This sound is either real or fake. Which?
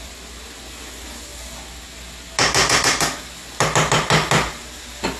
real